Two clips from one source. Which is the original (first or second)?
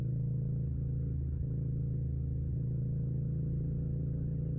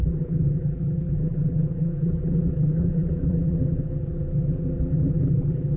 first